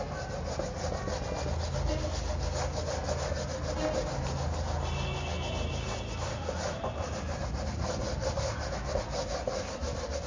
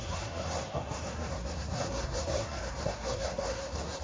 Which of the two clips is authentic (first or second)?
first